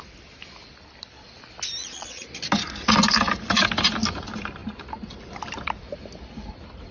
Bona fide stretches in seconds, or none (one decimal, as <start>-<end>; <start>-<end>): 0.0-1.8; 2.3-6.9